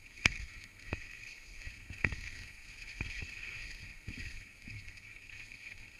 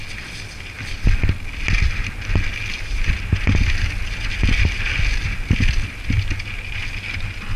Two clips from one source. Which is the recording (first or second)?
second